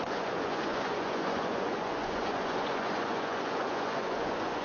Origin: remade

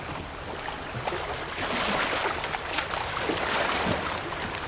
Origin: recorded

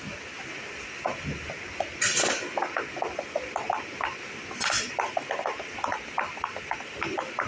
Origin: recorded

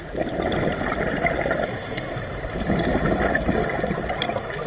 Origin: recorded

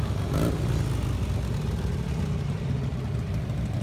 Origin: recorded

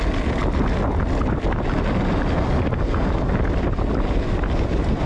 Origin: recorded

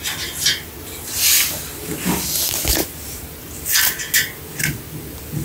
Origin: recorded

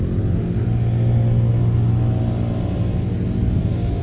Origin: recorded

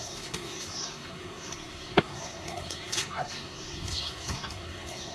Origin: remade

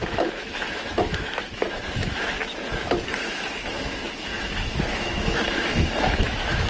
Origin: remade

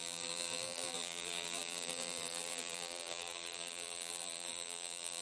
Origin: remade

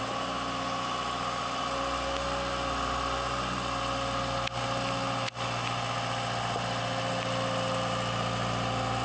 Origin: recorded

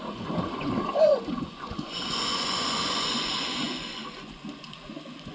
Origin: remade